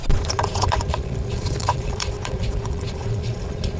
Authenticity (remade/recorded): remade